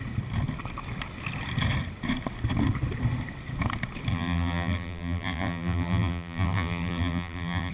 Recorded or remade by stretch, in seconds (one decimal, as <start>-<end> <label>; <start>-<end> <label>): 0.0-4.1 recorded; 4.1-7.7 remade